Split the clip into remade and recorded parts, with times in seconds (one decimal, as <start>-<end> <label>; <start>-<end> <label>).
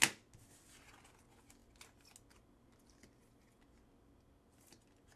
0.0-5.2 recorded